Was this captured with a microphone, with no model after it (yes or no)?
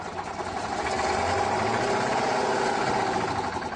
yes